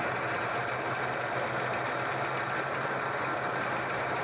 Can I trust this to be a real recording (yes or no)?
yes